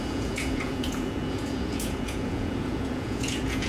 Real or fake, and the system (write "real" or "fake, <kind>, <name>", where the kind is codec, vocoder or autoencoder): fake, vocoder, Vocos